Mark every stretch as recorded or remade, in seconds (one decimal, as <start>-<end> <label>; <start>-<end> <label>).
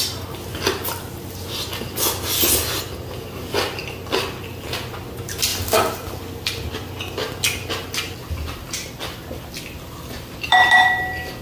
0.0-11.4 recorded